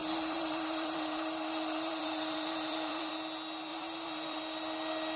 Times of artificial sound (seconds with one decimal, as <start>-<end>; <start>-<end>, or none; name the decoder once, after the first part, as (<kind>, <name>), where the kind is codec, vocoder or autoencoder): 0.0-3.1 (vocoder, BigVGAN v2); 3.7-4.4